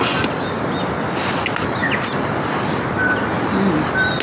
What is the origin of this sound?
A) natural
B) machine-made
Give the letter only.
A